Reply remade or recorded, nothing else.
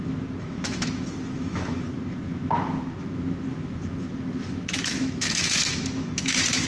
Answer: remade